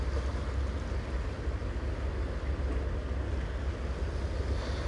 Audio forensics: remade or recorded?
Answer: recorded